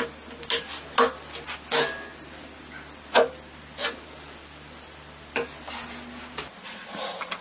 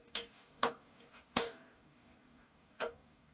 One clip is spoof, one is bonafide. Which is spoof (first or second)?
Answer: second